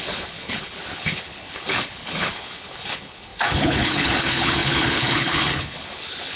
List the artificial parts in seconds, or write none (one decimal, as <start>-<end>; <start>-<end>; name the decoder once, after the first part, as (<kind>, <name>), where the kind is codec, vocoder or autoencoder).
0.0-6.4 (codec, HILCodec)